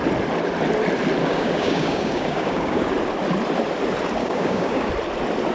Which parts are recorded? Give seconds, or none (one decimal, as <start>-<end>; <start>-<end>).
0.0-1.2; 2.9-4.2; 4.9-5.5